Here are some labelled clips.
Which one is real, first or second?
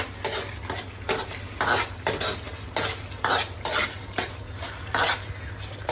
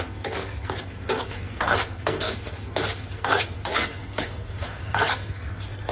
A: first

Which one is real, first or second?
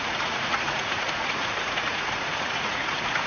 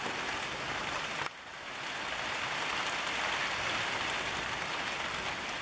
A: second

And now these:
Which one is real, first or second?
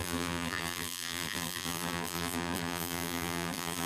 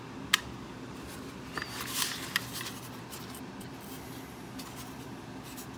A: second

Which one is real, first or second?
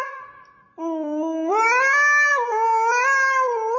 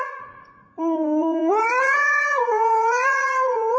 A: first